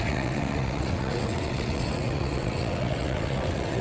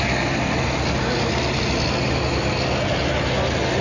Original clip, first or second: second